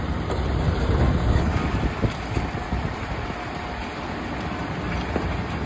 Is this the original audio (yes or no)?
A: yes